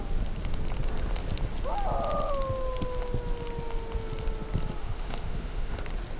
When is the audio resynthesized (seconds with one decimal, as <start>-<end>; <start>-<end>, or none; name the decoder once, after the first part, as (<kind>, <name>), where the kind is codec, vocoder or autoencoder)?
4.8-5.8 (autoencoder, DAC-VAE)

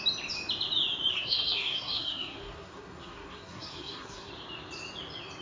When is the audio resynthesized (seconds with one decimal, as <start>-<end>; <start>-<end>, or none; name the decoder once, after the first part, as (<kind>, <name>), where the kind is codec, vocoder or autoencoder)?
1.1-4.3 (codec, SNAC)

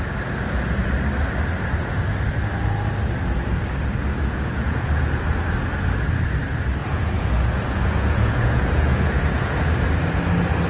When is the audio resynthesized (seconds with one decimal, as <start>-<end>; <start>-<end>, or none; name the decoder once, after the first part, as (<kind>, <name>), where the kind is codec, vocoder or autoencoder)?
4.1-5.2 (vocoder, Vocos); 6.8-9.7

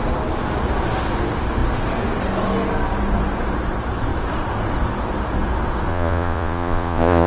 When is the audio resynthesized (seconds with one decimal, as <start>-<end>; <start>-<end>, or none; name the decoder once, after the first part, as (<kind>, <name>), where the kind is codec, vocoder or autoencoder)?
5.9-7.3 (vocoder, Vocos)

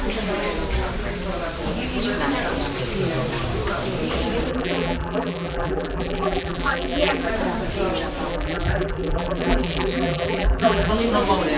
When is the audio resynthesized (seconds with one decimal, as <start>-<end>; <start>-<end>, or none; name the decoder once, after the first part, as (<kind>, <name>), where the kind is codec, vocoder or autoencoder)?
4.5-7.3 (vocoder, BigVGAN v2); 8.3-10.9